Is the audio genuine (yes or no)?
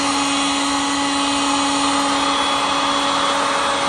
yes